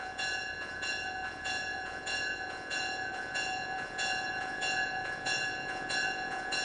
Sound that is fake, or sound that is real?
fake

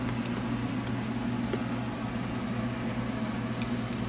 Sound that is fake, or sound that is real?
real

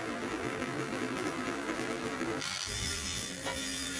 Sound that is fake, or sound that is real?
fake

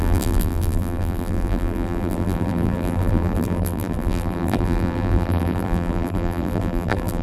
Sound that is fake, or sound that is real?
fake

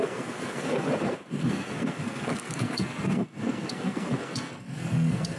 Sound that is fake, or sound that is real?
fake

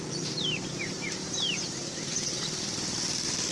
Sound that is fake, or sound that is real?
fake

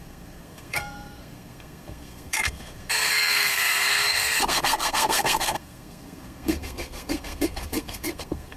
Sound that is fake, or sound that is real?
fake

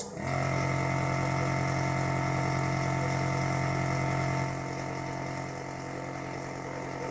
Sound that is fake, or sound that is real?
real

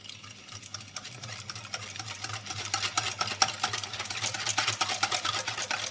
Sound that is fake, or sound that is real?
real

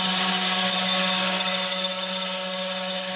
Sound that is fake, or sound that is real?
fake